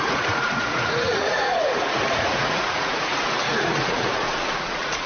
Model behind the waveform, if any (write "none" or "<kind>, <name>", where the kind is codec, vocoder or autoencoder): vocoder, Vocos